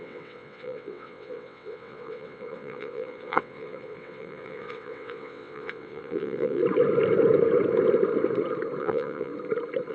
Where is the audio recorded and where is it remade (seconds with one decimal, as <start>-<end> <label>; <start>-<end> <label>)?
0.0-6.6 remade; 6.6-8.8 recorded; 8.8-9.3 remade; 9.3-9.9 recorded